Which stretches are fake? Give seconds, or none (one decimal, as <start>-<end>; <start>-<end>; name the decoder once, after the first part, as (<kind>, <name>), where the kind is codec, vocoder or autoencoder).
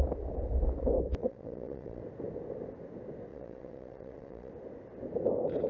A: 1.2-2.0 (vocoder, WaveNeXt); 3.3-4.5